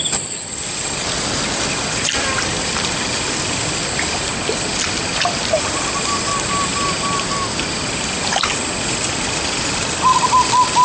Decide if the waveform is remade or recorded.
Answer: remade